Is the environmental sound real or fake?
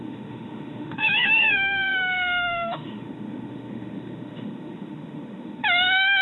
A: fake